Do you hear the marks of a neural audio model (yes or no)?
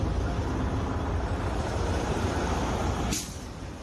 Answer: no